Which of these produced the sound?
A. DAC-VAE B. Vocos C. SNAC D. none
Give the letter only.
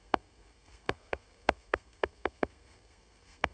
C